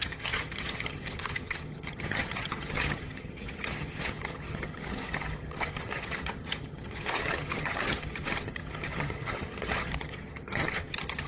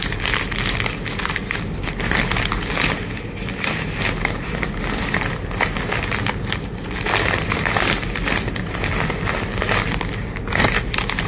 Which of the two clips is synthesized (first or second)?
first